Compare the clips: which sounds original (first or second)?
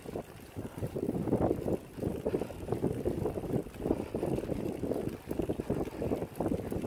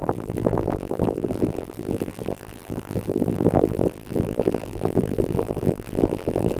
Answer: first